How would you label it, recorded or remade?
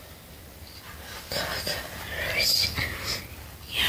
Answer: remade